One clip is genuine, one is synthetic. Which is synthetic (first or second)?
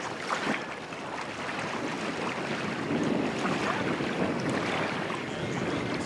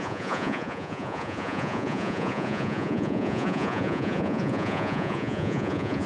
second